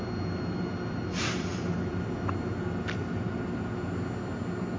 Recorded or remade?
recorded